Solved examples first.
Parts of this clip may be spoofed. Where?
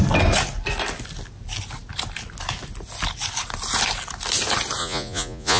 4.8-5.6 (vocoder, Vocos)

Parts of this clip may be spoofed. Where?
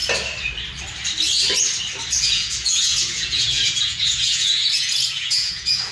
2.2-5.9 (vocoder, Vocos)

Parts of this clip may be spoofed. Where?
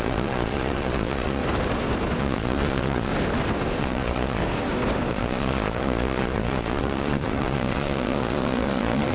0.0-1.4 (vocoder, Vocos); 2.2-3.1; 3.8-4.4; 5.1-9.1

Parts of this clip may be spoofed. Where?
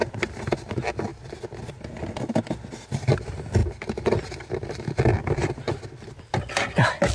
none